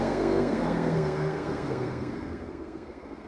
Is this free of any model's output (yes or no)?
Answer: no